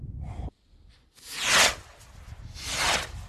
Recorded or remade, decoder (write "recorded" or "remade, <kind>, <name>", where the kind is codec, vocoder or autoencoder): recorded